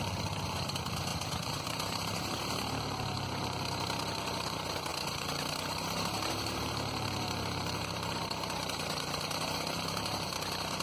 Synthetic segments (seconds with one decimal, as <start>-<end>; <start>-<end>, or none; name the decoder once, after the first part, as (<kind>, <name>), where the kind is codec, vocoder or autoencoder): 0.0-4.9 (vocoder, BigVGAN v2); 6.3-10.8